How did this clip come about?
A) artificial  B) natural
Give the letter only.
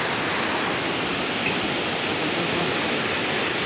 B